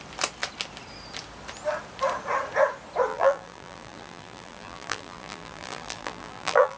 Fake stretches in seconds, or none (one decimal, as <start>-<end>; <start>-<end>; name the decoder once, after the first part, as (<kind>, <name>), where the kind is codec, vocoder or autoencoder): 3.1-6.8 (vocoder, BigVGAN v2)